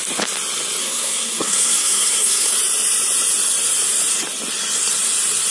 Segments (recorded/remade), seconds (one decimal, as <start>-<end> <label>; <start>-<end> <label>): 0.0-0.8 recorded; 0.8-2.5 remade; 2.5-5.5 recorded